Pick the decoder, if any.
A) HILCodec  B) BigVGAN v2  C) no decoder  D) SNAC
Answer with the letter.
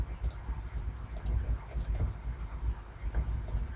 C